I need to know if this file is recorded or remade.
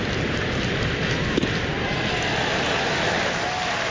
recorded